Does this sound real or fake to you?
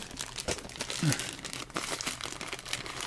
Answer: real